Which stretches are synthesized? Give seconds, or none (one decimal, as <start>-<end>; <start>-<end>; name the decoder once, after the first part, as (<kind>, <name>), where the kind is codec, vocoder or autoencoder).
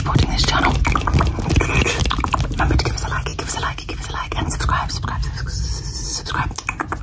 none